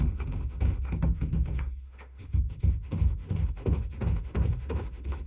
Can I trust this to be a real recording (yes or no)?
no